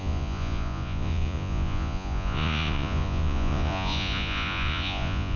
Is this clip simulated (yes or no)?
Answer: yes